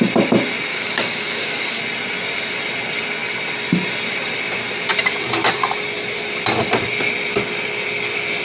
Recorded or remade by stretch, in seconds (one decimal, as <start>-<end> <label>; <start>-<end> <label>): 0.0-0.7 recorded; 0.7-1.8 remade; 1.8-8.4 recorded